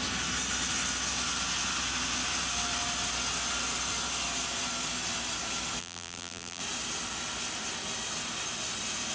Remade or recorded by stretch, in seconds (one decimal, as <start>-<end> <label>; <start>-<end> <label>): 0.0-5.8 recorded; 5.8-6.6 remade; 6.6-9.1 recorded